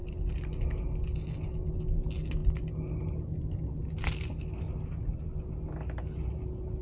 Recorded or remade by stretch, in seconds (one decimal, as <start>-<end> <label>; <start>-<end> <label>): 0.0-6.8 recorded